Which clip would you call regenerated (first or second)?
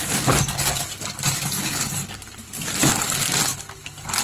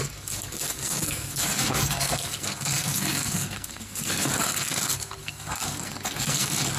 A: second